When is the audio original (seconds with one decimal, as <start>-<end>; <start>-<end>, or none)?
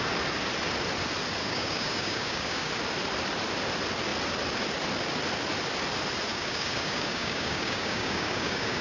0.0-1.4; 2.7-6.3